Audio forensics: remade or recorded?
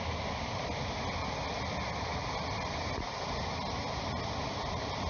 recorded